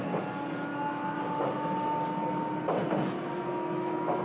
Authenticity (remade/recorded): recorded